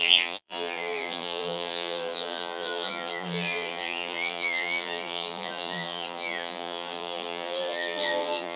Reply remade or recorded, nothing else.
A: remade